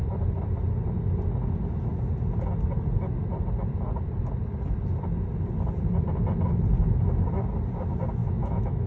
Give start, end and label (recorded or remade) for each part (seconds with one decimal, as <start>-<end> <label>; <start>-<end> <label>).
0.0-8.2 recorded; 8.2-8.9 remade